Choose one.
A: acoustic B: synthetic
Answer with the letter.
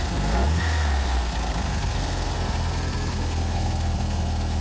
B